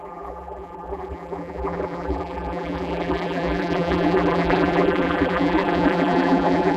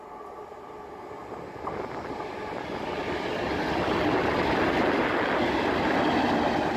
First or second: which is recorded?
second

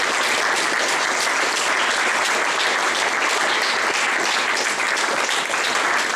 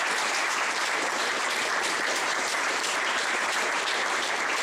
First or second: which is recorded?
first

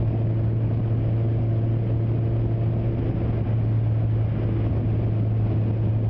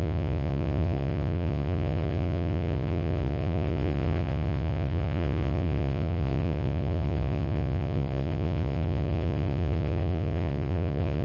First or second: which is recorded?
first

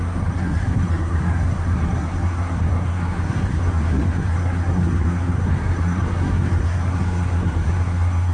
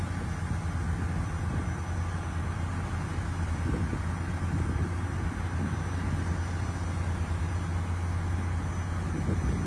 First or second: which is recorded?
second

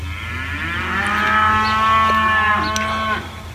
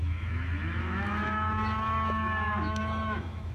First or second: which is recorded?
first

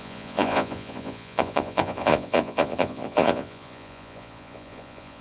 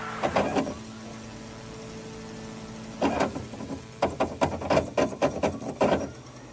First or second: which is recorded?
second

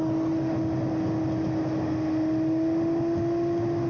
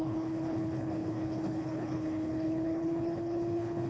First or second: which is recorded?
first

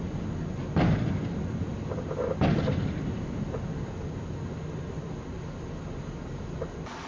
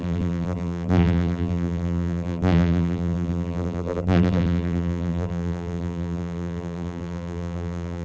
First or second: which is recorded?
first